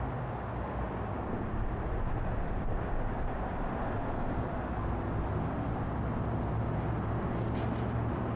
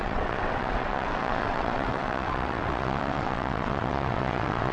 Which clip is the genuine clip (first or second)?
first